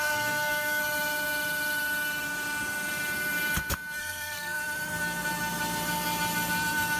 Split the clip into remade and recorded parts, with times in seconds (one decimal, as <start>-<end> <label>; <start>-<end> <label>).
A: 0.0-0.8 remade; 0.8-4.0 recorded; 4.0-4.6 remade; 4.6-7.0 recorded